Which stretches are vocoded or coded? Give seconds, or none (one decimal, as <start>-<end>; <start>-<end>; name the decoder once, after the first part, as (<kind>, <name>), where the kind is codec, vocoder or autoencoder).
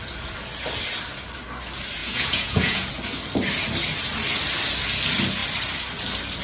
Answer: 2.0-2.9 (vocoder, Vocos)